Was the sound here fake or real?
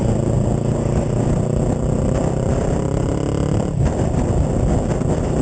real